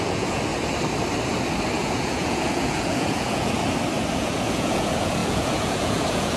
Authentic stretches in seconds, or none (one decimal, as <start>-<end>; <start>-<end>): 0.5-1.7; 3.6-4.1